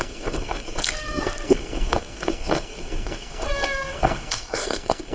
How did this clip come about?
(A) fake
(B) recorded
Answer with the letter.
A